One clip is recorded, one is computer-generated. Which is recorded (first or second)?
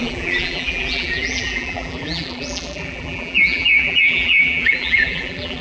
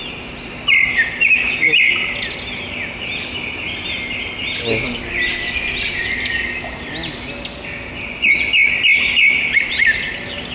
second